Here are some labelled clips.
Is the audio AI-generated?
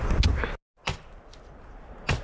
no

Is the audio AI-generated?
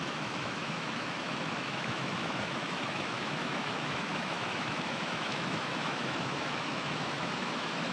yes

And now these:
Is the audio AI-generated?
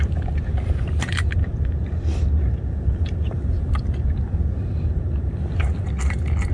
no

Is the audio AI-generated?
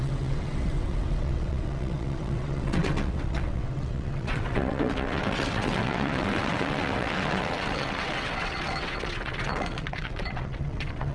yes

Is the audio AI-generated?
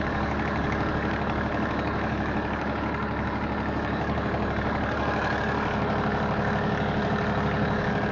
yes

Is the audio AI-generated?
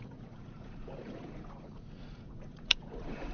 yes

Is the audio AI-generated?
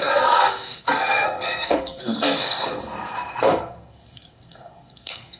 yes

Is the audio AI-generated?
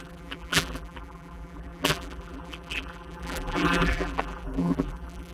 yes